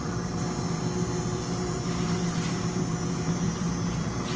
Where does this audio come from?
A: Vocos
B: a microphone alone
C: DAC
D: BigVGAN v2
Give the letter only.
D